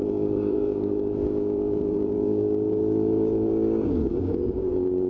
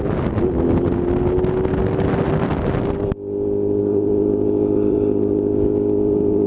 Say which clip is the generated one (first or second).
first